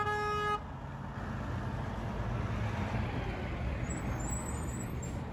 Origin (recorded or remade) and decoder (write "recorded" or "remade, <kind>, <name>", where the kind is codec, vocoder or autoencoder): recorded